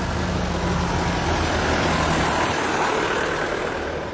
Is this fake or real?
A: real